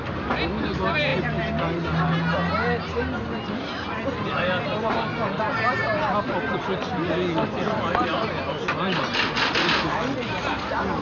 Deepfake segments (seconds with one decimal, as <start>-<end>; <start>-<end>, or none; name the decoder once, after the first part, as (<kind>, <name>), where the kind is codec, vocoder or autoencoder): none